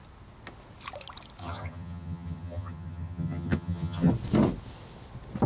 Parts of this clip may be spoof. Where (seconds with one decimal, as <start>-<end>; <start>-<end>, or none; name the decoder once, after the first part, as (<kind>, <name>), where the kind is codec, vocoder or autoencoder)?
1.4-4.1 (vocoder, HiFi-GAN)